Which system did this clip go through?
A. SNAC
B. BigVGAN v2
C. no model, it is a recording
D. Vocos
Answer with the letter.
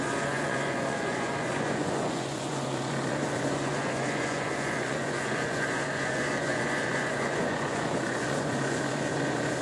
D